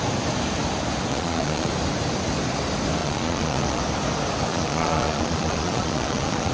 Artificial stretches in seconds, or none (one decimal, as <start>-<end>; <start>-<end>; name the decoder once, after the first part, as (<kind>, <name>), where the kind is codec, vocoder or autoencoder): 1.1-1.7 (vocoder, Vocos); 3.0-3.8; 4.5-6.5